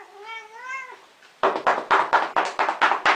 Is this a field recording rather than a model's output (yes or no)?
yes